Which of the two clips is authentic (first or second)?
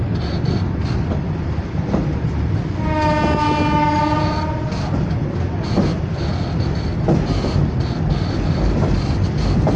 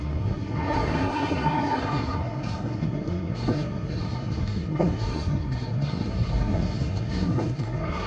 first